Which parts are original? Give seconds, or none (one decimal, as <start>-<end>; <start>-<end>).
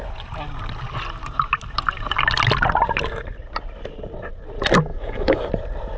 0.0-4.9; 5.5-6.0